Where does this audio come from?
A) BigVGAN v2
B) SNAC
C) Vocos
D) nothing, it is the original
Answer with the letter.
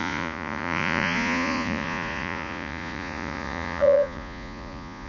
C